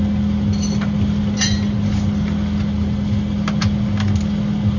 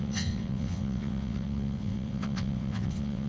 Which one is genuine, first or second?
first